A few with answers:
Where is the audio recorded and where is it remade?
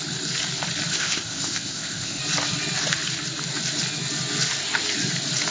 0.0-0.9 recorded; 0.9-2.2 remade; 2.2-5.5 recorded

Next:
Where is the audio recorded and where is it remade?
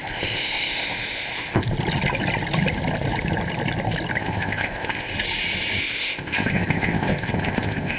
0.0-1.6 remade; 1.6-4.2 recorded; 4.2-5.1 remade; 5.1-5.8 recorded; 5.8-8.0 remade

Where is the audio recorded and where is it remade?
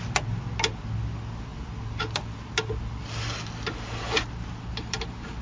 0.0-5.4 recorded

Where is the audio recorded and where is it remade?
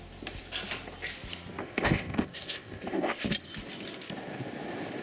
0.0-1.6 recorded; 1.6-3.3 remade; 3.3-5.0 recorded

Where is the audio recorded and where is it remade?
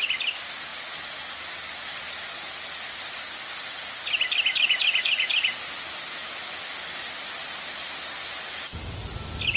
0.0-9.6 recorded